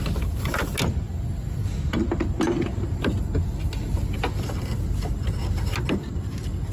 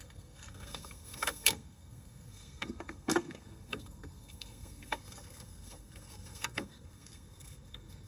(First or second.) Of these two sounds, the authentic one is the first